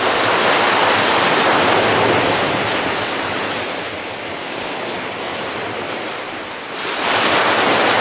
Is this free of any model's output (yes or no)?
yes